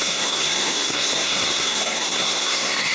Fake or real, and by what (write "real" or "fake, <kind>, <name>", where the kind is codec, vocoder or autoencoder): fake, codec, SNAC